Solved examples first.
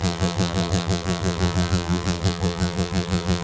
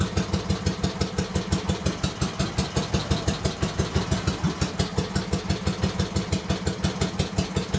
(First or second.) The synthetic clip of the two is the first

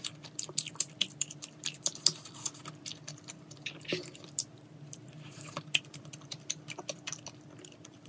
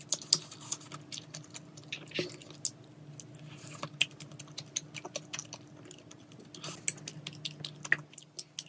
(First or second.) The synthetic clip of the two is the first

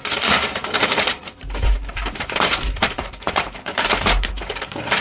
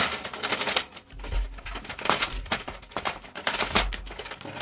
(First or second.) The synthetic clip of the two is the first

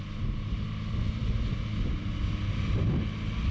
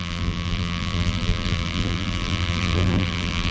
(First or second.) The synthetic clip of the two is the second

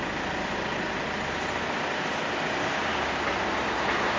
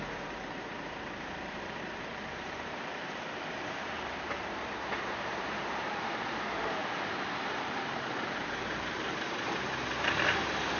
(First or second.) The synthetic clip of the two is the second